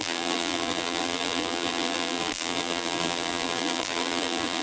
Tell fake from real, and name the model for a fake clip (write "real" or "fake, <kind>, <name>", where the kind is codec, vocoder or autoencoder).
fake, vocoder, BigVGAN v2